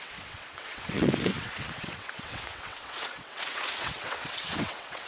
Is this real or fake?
fake